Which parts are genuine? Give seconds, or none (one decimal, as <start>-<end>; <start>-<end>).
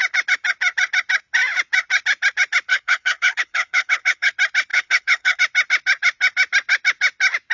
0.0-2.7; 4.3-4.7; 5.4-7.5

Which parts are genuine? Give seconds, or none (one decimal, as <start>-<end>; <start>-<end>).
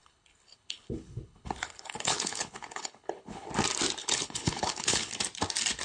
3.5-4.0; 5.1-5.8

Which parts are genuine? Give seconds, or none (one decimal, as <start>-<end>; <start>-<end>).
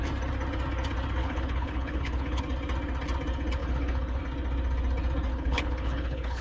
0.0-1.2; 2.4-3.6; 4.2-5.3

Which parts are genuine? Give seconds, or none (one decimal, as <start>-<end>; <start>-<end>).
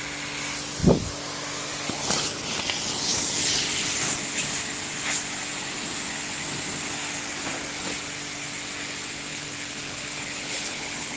0.0-9.3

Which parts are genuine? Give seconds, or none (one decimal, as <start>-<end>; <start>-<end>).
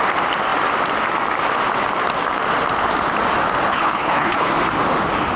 0.0-3.7; 4.5-5.4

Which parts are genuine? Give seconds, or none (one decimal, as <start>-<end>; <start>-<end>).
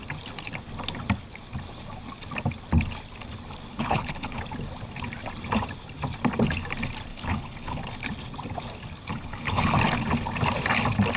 0.0-3.7; 4.4-7.1; 7.8-9.1; 9.8-11.2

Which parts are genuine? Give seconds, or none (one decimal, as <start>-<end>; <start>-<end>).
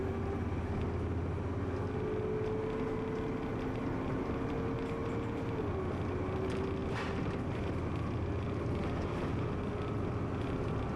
0.0-11.0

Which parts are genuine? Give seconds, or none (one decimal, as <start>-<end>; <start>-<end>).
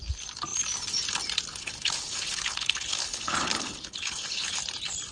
0.0-1.5; 4.6-5.1